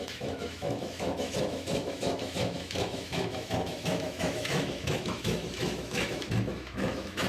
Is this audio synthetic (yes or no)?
yes